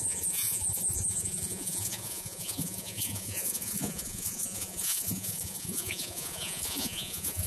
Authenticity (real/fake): fake